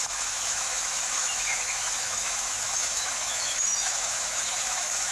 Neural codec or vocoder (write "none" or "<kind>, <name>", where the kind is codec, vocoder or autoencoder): autoencoder, DAC-VAE